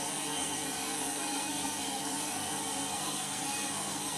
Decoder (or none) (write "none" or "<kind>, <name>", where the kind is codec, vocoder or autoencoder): codec, SNAC